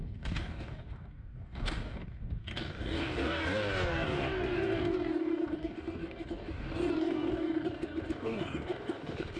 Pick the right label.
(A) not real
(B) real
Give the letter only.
A